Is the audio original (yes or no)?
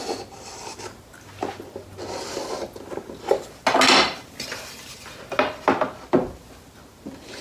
yes